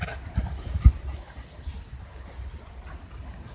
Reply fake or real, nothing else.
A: real